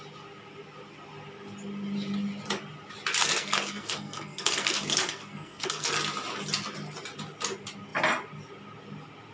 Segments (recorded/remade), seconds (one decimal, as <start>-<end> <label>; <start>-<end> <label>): 0.0-3.2 recorded; 3.2-5.9 remade; 5.9-9.3 recorded